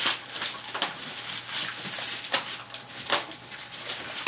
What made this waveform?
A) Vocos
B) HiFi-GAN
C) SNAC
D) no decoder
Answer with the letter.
D